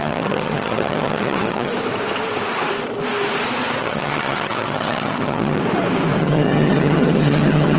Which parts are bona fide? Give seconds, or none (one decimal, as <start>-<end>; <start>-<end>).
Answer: 1.7-3.8; 5.6-6.2